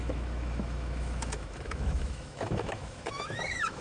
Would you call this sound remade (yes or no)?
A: yes